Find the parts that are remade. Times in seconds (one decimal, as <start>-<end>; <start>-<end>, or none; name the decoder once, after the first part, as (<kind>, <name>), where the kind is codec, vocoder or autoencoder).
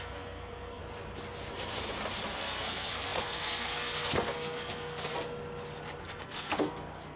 0.0-0.8 (codec, SNAC); 2.4-5.1; 6.0-7.2